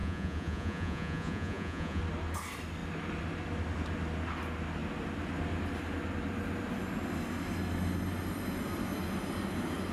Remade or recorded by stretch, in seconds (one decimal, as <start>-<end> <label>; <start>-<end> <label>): 0.0-2.0 remade; 2.0-9.9 recorded